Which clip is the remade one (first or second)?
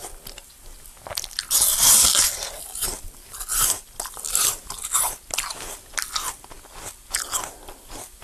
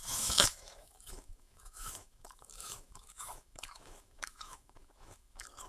second